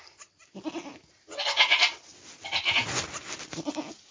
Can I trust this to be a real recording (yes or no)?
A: yes